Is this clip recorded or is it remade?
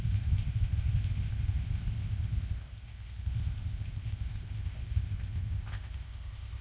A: remade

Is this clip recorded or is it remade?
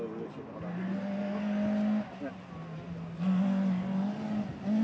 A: recorded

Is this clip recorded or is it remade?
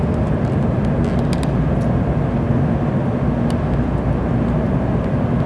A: recorded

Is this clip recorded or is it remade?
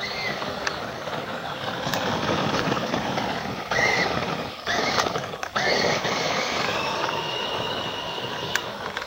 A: remade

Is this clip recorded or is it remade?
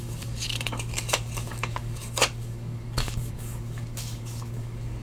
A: remade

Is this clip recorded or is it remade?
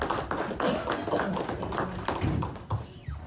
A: recorded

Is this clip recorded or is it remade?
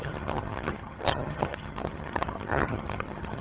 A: remade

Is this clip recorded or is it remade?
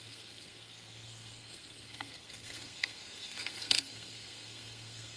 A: remade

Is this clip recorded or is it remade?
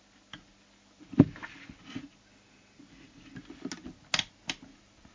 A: recorded